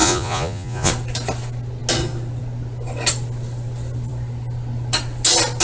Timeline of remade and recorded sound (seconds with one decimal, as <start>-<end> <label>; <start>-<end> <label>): 0.0-0.9 remade; 0.9-5.6 recorded